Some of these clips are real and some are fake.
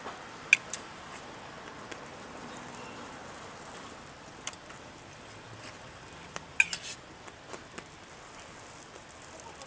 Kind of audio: real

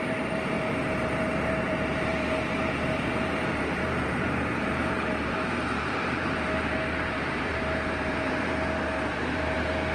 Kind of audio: fake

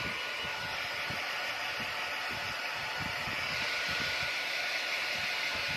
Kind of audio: real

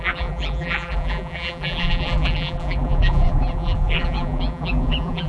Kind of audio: fake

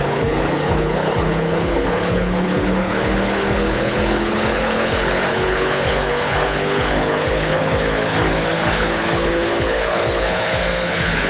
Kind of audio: fake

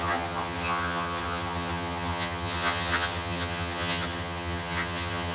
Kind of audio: fake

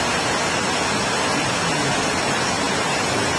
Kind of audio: real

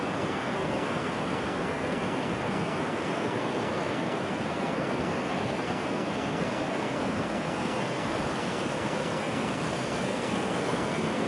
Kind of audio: fake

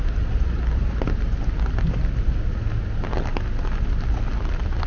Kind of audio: real